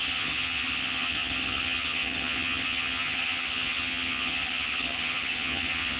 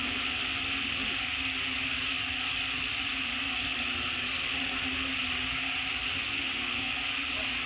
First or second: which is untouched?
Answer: second